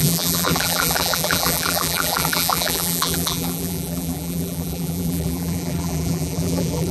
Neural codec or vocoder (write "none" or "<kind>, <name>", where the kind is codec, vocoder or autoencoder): vocoder, BigVGAN v2